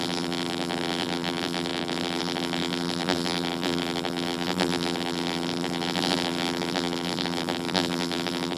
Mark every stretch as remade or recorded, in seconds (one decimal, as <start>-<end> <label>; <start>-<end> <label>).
0.0-8.6 remade